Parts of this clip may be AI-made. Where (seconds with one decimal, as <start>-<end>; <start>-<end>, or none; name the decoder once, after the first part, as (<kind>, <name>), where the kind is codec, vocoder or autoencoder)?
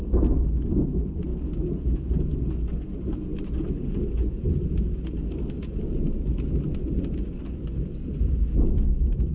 none